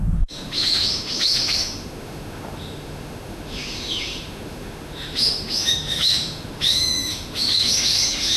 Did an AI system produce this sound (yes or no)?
yes